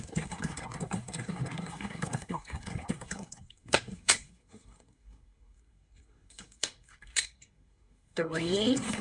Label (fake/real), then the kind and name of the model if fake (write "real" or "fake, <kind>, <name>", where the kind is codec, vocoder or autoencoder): fake, codec, SNAC